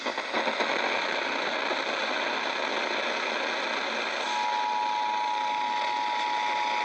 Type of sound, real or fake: real